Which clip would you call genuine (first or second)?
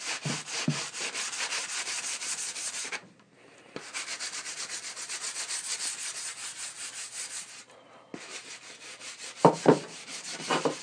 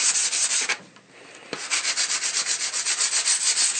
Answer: second